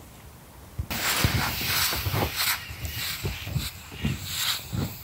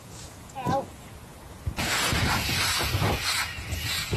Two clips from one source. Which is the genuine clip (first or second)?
first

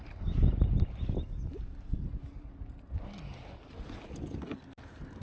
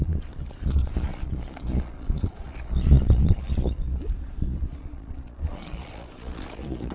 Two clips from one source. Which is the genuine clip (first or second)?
first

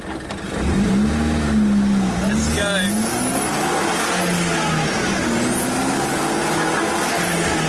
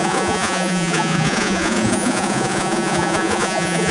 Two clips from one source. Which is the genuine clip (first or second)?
first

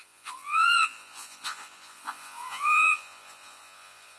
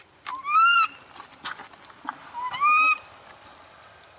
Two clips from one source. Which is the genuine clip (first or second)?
second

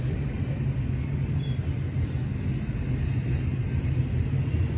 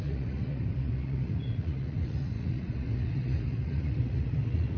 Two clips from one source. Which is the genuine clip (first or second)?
first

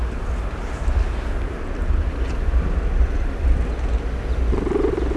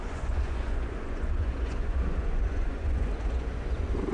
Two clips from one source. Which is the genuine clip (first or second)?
first